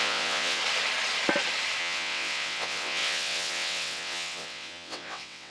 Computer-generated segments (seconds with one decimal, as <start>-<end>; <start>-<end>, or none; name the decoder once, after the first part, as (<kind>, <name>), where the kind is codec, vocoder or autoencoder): 0.0-0.6 (vocoder, WaveNeXt); 1.8-5.5